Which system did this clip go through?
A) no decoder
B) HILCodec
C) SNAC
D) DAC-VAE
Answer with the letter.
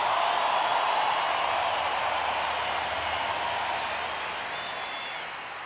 A